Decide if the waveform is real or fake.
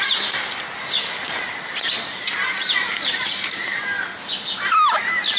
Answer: real